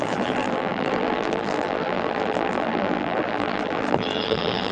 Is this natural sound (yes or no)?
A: no